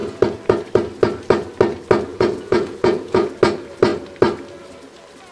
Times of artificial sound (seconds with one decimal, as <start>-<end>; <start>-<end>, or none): 2.1-3.3